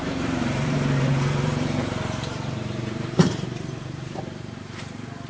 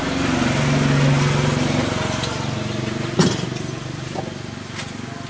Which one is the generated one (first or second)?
first